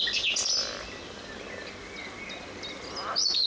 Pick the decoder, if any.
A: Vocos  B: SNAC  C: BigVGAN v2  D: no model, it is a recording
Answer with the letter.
D